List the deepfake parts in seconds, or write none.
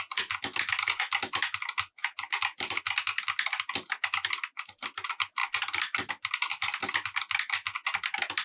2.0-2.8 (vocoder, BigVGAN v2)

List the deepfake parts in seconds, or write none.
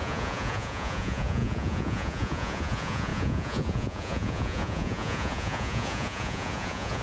0.0-7.0 (vocoder, Vocos)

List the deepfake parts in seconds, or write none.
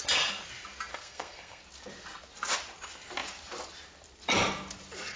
0.9-1.6 (codec, SNAC)